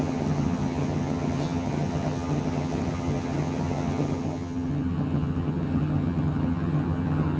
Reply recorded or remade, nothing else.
remade